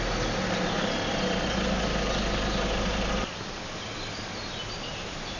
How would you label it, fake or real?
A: real